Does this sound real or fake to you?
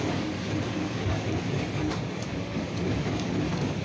fake